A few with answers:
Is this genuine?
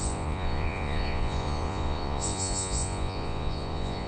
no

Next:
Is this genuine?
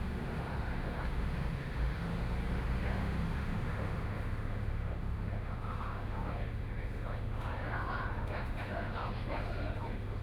no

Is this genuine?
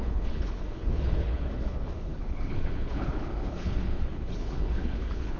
no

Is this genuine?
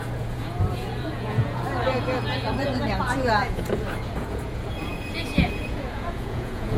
no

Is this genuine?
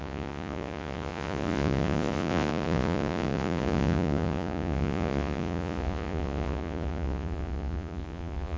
no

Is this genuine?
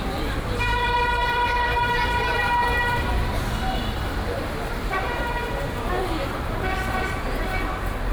no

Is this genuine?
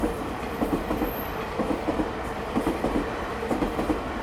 no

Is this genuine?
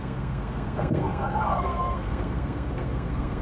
no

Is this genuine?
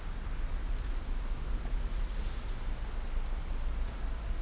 yes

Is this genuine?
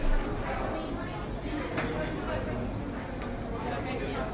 yes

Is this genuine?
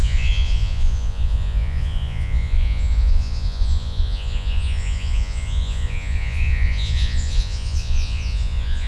no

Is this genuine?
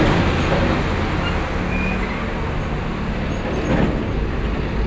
yes